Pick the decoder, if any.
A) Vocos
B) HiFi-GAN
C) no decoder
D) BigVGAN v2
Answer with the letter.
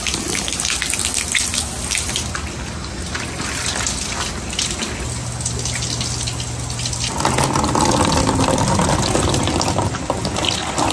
C